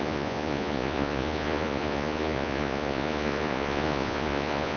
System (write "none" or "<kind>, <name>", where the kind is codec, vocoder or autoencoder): vocoder, Vocos